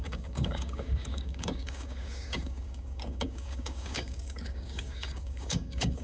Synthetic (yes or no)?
yes